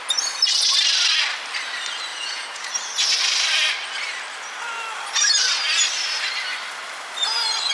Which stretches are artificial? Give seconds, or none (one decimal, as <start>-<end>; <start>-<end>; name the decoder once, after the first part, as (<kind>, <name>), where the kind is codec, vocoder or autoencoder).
2.1-2.7 (vocoder, Vocos)